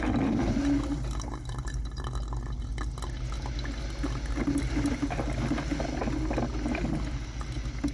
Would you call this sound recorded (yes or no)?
yes